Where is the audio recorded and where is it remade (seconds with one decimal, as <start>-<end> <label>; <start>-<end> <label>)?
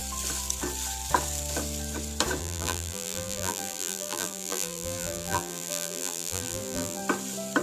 0.0-2.4 recorded; 2.4-7.0 remade; 7.0-7.6 recorded